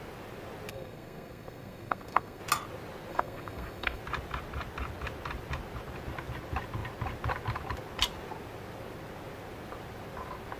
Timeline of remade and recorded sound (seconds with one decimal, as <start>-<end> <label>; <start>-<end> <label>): 0.0-0.7 recorded; 0.7-2.4 remade; 2.4-3.1 recorded; 3.1-4.0 remade; 4.0-10.6 recorded